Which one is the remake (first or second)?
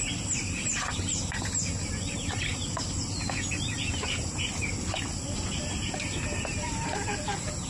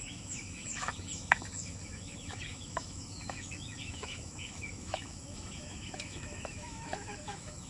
second